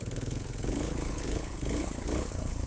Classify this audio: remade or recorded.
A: remade